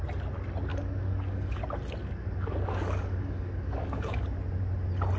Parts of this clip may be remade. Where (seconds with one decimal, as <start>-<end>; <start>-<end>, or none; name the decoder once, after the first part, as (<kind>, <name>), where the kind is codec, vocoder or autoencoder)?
0.7-1.6 (codec, DAC); 2.0-4.2